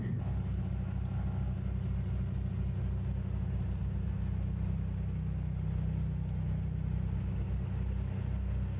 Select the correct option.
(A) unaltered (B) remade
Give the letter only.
A